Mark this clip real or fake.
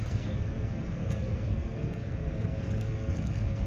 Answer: fake